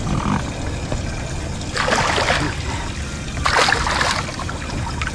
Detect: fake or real real